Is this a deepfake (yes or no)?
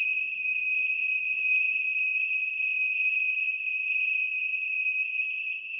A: yes